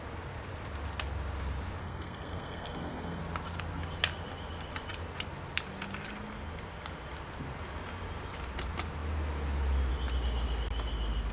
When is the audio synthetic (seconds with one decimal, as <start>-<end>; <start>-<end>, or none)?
1.8-3.2